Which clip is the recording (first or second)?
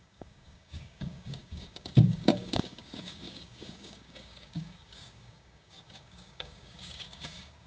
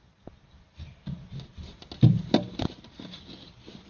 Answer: second